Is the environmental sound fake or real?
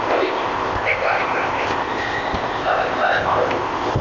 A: fake